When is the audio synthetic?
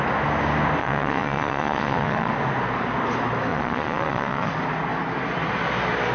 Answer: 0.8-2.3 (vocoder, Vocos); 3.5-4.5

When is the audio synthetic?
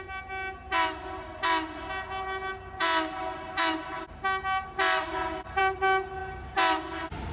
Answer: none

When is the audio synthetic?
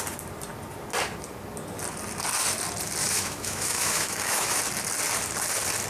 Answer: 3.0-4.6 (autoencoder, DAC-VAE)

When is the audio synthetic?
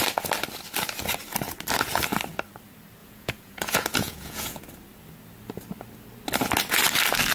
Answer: 3.0-4.6 (vocoder, Vocos)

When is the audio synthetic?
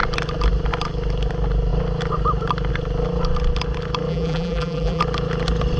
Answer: 4.1-5.0 (vocoder, BigVGAN v2)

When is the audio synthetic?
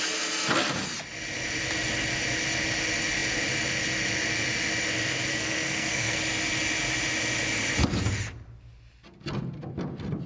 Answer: 5.3-6.2 (codec, SNAC)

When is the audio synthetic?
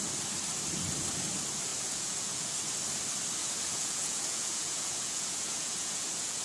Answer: 1.7-2.5 (vocoder, Vocos); 3.4-6.4